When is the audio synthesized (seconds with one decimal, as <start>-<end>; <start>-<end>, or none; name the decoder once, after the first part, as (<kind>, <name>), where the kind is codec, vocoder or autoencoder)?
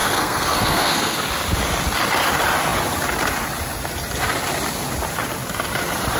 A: 0.0-1.2 (codec, SNAC)